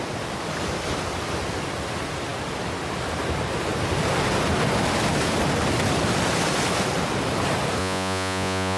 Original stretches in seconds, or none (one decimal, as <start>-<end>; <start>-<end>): 0.0-7.8